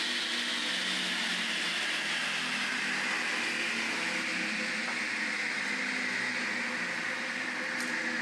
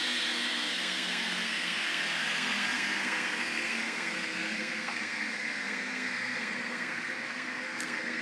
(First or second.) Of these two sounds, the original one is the first